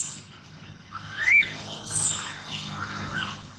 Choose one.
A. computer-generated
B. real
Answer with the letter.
A